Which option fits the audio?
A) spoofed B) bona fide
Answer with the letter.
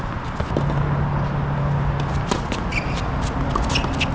B